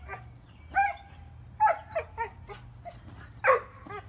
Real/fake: real